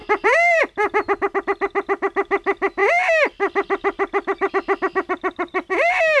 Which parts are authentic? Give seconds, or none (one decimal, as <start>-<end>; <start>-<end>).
0.6-6.2